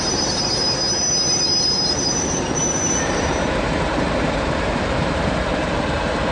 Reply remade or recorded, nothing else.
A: remade